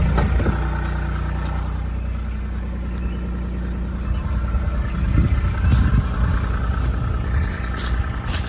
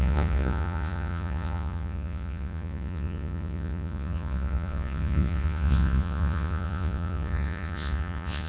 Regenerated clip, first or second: second